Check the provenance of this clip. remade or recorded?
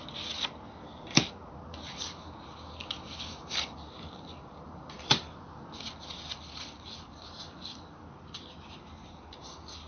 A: recorded